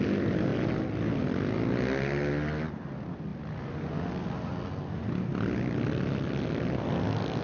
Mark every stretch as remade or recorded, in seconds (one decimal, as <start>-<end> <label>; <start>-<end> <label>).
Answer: 0.0-7.4 recorded